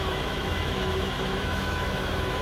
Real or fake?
fake